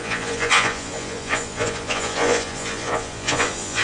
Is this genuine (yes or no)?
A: no